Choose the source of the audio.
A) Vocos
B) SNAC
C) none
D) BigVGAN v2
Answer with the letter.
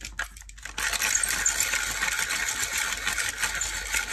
C